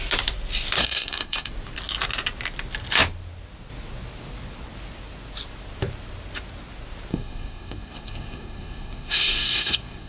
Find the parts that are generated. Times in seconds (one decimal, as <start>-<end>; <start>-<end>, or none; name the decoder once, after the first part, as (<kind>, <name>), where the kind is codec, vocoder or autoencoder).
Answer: 0.8-1.5 (codec, SNAC); 7.1-10.1